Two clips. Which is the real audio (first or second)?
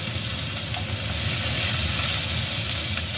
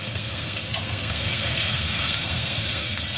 first